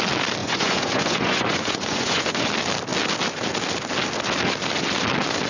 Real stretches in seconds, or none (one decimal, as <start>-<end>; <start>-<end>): 0.0-0.4; 2.5-5.5